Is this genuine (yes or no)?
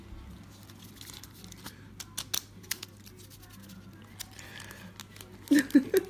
yes